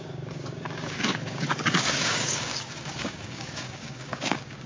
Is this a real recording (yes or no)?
no